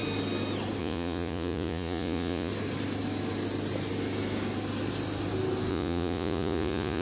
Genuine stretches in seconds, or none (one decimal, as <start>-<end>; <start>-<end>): 0.0-0.8; 2.5-5.7